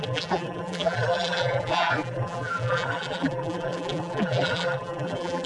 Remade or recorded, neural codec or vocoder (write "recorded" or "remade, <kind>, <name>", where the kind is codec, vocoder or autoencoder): remade, vocoder, BigVGAN v2